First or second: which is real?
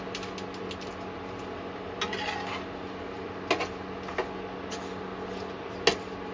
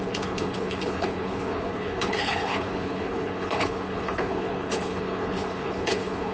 first